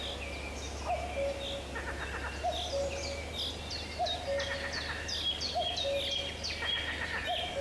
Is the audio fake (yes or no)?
no